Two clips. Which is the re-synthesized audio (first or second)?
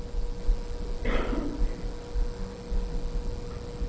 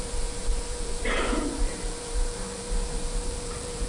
second